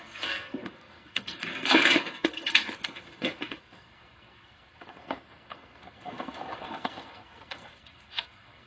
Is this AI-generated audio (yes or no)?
yes